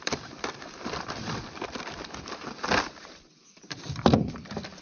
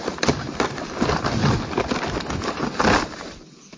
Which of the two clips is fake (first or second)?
first